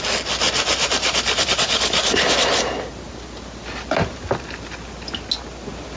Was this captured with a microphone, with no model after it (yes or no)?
yes